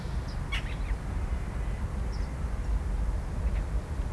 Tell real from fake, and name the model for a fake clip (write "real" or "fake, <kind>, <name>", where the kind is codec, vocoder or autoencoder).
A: real